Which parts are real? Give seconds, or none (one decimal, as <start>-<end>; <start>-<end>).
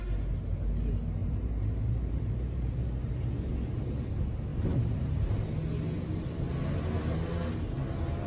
0.0-1.2; 3.1-4.5; 5.3-8.3